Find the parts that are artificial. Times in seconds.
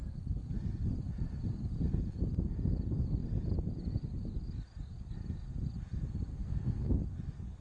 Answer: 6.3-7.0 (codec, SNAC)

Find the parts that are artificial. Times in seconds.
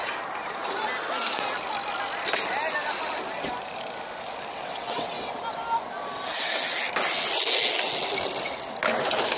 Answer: 4.5-5.4 (vocoder, WaveNeXt)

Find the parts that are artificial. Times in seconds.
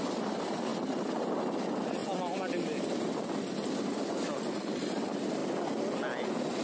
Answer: none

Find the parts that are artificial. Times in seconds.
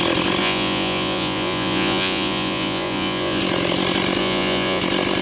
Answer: 0.4-3.4 (vocoder, Vocos); 4.2-4.8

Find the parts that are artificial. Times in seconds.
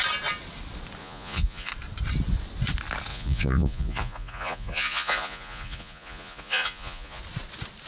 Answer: 1.0-1.7 (vocoder, Vocos); 3.1-7.2